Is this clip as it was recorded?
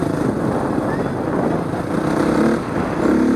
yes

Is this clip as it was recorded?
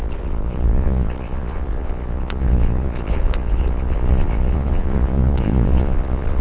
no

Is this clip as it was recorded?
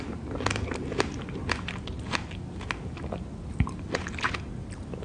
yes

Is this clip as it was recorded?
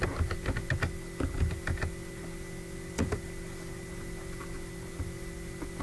yes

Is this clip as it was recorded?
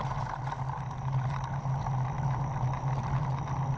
yes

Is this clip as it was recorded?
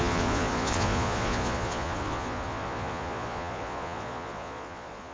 no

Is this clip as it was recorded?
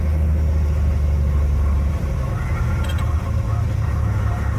yes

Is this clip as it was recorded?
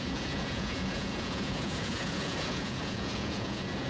no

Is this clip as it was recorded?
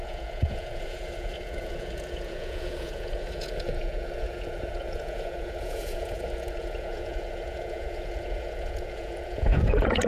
no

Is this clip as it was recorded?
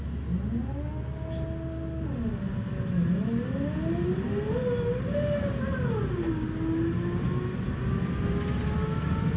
yes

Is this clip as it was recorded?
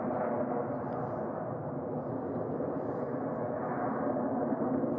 yes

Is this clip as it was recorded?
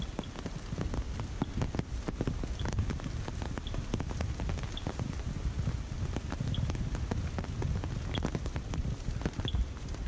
yes